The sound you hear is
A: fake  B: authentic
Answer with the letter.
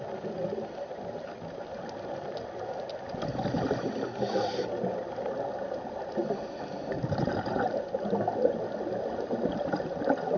B